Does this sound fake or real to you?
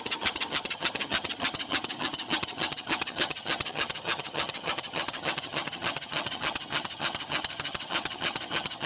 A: fake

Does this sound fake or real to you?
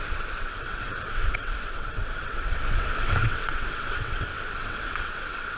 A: fake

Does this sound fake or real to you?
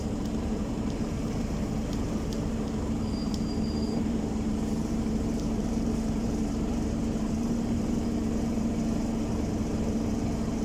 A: fake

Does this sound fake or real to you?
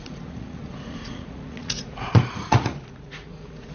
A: fake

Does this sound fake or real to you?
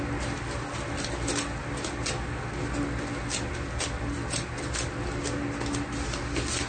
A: real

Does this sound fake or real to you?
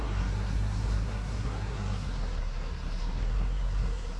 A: fake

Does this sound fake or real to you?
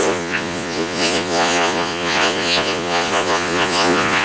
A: fake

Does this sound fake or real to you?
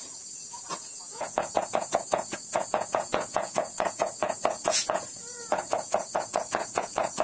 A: fake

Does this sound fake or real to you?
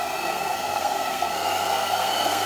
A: fake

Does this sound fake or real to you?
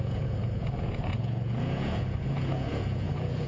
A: fake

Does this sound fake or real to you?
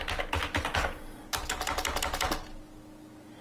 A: real